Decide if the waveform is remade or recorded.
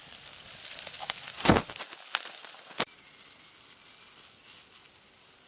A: recorded